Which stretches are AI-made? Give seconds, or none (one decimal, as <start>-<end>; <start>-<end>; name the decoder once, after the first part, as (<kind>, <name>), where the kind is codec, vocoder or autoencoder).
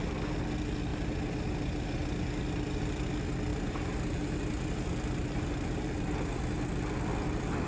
3.5-6.4 (vocoder, BigVGAN v2)